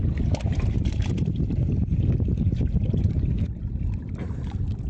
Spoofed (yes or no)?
no